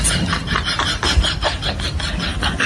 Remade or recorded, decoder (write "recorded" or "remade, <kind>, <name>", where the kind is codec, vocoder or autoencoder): recorded